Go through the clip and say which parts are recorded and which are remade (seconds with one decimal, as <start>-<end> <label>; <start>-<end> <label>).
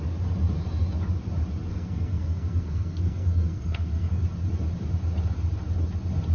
0.0-1.7 recorded; 1.7-4.2 remade; 4.2-6.3 recorded